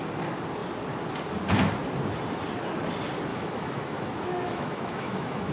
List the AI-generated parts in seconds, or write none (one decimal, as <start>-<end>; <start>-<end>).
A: 3.3-5.5